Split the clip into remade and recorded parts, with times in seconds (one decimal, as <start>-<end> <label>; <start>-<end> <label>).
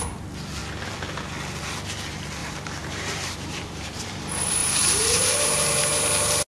0.0-2.4 recorded; 2.4-4.1 remade; 4.1-4.6 recorded; 4.6-5.8 remade; 5.8-6.5 recorded